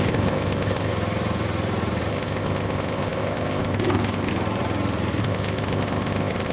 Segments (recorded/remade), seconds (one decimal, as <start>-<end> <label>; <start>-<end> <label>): 0.0-0.9 remade; 0.9-2.1 recorded; 2.1-4.3 remade; 4.3-5.2 recorded; 5.2-6.5 remade